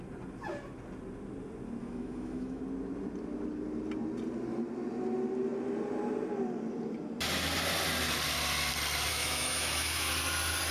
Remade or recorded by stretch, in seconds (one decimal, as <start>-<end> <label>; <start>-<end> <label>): 0.0-1.8 recorded; 1.8-2.6 remade; 2.6-9.1 recorded; 9.1-10.1 remade; 10.1-10.7 recorded